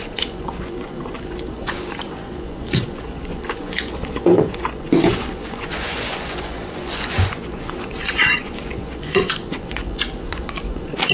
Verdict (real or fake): fake